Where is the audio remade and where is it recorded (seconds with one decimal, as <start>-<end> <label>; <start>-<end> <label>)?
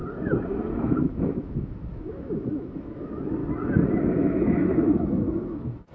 0.0-0.8 recorded; 0.8-3.4 remade; 3.4-4.1 recorded; 4.1-5.9 remade